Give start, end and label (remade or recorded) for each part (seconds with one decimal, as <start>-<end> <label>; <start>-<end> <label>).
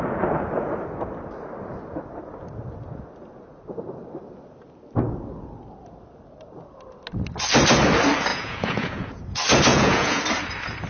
0.0-8.3 recorded; 8.3-9.2 remade; 9.2-9.7 recorded; 9.7-10.2 remade; 10.2-10.9 recorded